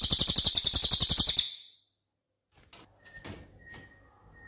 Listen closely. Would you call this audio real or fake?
real